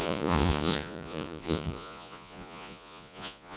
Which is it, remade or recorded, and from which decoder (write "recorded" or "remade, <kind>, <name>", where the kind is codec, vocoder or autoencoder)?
remade, vocoder, Vocos